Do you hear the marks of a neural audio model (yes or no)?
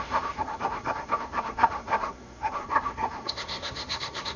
yes